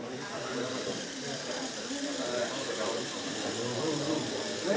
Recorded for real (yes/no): no